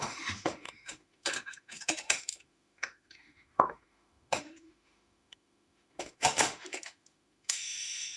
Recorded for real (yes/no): no